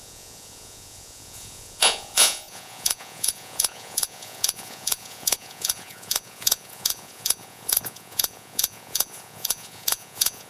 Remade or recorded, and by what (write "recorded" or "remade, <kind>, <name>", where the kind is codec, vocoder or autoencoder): remade, vocoder, Vocos